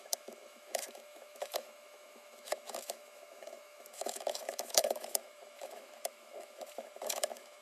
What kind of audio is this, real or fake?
fake